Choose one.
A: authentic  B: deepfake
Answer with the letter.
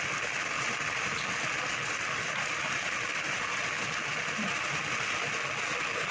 A